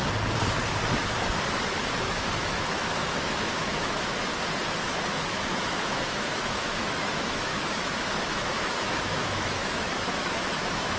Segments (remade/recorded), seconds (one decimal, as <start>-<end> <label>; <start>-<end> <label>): 0.0-2.0 recorded; 2.0-4.3 remade; 4.3-4.8 recorded; 4.8-11.0 remade